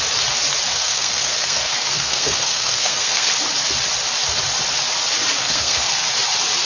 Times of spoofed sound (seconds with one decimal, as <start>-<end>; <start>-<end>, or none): 0.7-3.3; 5.4-6.0